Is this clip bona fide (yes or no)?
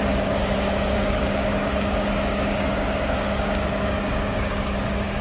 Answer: no